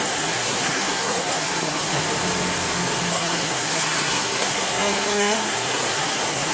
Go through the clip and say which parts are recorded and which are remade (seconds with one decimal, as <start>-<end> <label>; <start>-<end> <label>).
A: 0.0-2.0 remade; 2.0-3.1 recorded; 3.1-6.5 remade